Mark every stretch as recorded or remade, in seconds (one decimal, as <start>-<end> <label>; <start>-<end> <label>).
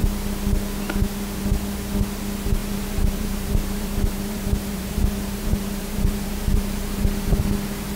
0.0-2.6 recorded; 2.6-7.4 remade; 7.4-8.0 recorded